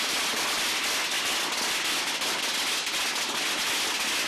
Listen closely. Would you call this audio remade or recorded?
recorded